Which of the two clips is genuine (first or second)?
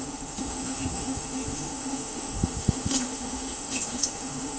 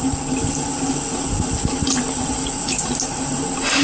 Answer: second